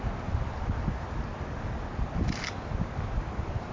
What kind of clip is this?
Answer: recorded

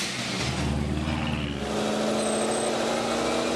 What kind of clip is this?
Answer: recorded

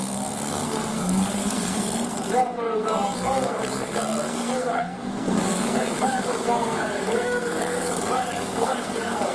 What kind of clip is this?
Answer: remade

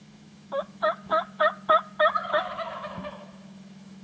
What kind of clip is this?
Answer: remade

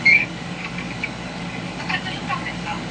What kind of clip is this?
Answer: remade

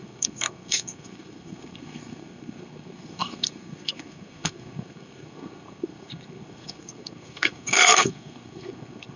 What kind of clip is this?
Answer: remade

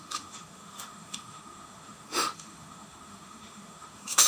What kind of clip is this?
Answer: remade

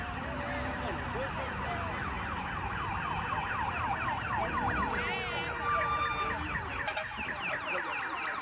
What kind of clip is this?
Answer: recorded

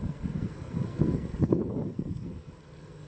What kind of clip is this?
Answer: remade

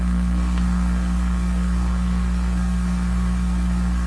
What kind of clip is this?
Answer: remade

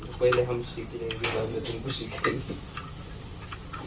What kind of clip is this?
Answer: recorded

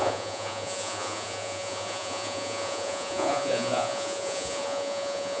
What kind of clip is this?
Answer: remade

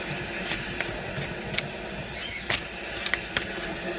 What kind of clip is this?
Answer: recorded